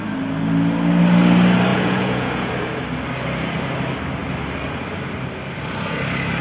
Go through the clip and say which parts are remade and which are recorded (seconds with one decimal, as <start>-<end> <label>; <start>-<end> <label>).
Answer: 0.0-1.7 recorded; 1.7-2.5 remade; 2.5-6.4 recorded